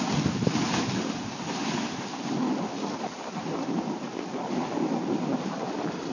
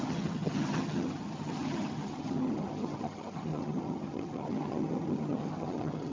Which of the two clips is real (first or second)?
first